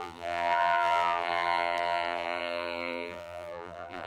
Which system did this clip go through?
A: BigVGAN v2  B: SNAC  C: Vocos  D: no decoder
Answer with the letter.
A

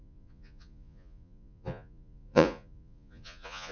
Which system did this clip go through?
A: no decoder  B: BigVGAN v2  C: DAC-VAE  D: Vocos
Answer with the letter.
D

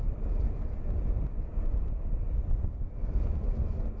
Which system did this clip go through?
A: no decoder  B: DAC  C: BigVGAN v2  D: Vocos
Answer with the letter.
A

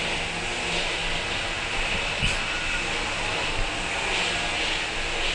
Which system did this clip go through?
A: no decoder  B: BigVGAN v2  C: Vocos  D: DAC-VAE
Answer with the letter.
A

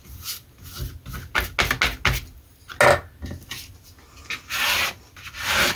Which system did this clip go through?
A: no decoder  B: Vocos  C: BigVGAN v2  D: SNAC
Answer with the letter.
A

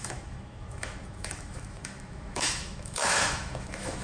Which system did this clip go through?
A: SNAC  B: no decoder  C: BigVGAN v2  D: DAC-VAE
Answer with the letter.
D